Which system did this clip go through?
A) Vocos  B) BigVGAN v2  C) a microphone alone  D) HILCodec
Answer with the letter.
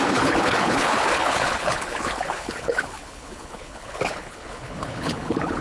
D